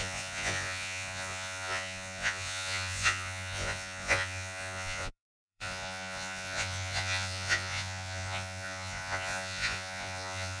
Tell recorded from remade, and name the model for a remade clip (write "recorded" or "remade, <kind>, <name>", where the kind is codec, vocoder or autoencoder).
remade, vocoder, Vocos